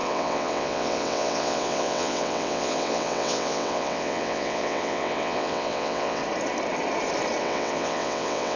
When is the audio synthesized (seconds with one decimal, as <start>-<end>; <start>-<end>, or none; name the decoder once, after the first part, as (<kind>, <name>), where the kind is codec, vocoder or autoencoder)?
0.0-6.2 (vocoder, WaveNeXt); 7.4-8.6